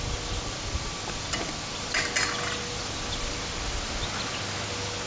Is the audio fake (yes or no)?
no